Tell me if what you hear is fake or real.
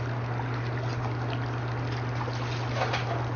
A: real